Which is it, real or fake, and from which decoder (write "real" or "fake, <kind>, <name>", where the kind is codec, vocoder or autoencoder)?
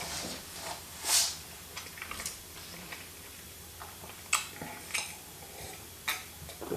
real